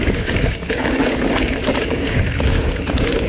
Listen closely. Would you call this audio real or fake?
fake